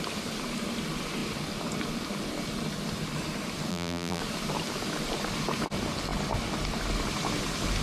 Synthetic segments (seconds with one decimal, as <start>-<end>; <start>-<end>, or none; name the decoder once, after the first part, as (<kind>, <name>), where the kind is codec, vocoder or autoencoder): 3.7-4.2 (vocoder, BigVGAN v2)